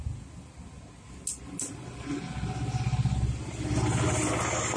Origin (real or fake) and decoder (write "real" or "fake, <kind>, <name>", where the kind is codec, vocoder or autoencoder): real